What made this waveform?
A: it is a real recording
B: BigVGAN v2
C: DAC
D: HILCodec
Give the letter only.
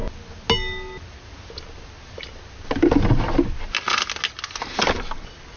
A